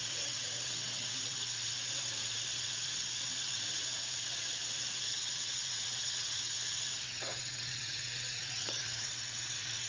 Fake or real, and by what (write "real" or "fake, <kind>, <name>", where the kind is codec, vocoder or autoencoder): fake, vocoder, WaveNeXt